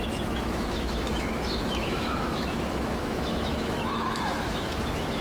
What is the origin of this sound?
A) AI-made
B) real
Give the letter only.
A